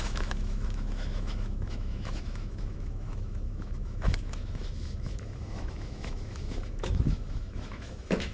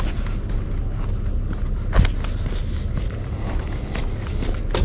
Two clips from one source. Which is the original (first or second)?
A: second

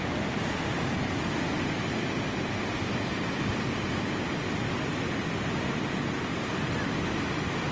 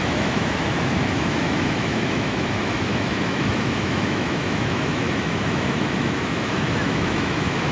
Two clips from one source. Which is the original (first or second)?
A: first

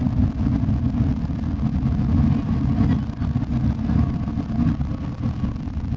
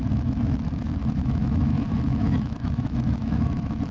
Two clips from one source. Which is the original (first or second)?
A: first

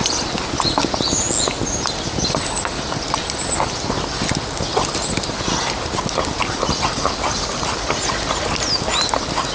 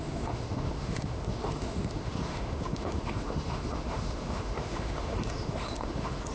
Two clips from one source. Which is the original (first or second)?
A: first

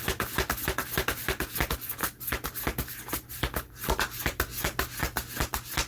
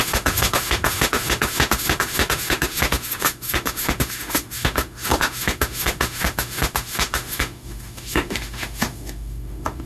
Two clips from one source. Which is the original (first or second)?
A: first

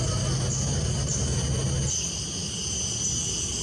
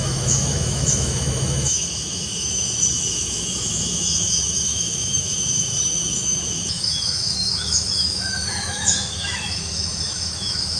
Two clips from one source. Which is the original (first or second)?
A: first